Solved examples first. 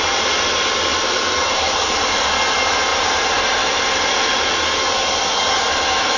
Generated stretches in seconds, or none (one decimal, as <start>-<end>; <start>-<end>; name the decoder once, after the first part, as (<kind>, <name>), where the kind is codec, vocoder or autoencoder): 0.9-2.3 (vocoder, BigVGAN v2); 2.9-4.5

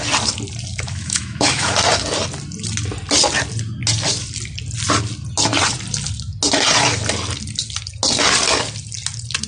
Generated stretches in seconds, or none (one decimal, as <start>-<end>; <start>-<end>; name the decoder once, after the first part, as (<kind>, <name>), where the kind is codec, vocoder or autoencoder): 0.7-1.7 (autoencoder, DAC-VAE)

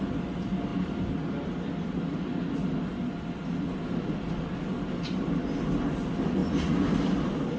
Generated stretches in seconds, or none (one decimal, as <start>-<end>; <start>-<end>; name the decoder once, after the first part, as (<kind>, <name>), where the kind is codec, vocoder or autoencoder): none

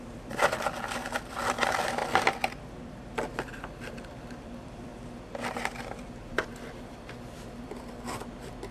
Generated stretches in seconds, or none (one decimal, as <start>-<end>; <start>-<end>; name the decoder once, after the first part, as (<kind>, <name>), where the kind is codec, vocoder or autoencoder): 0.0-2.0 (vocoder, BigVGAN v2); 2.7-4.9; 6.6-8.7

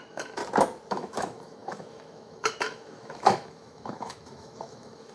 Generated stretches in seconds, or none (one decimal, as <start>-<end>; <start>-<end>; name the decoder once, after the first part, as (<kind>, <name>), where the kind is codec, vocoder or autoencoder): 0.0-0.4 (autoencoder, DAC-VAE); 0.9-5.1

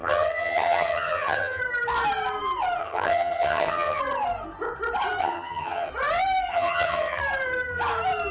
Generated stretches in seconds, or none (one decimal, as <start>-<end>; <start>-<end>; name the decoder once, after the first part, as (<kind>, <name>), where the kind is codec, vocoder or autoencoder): 0.0-1.6 (vocoder, HiFi-GAN); 2.8-4.0; 5.2-5.9; 6.5-7.2